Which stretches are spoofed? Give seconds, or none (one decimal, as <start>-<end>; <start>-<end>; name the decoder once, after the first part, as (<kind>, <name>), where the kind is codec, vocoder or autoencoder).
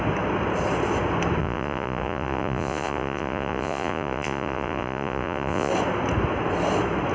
1.4-5.7 (vocoder, Vocos)